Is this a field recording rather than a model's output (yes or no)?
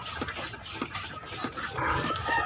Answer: yes